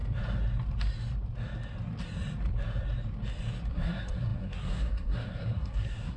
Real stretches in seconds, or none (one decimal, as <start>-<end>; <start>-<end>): 0.0-3.7